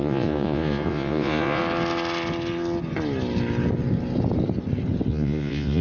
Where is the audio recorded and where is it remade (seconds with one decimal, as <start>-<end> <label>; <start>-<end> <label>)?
0.0-1.6 remade; 1.6-5.1 recorded; 5.1-5.8 remade